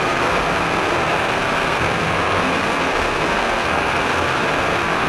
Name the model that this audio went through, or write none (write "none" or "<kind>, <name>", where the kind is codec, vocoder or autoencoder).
codec, SNAC